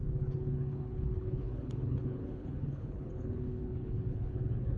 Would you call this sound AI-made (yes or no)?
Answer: yes